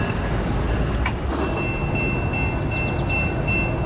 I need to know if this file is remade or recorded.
recorded